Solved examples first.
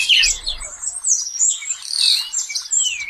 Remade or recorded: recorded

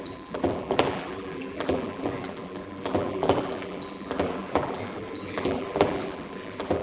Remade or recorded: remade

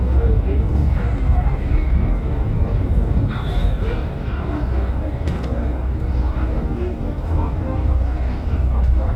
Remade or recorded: remade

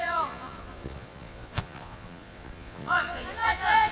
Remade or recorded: remade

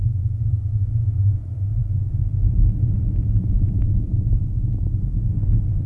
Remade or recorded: recorded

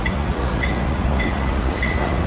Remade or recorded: remade